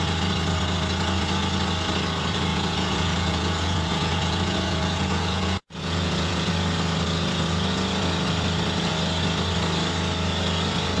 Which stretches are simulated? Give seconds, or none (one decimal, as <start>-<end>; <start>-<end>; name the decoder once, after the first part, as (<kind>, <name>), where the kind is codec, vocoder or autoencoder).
2.5-6.5 (vocoder, Vocos)